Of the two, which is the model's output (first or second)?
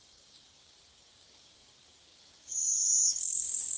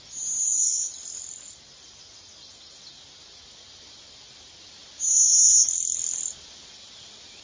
first